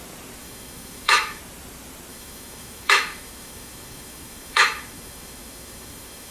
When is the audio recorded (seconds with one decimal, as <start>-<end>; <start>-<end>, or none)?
0.0-0.4; 1.4-2.1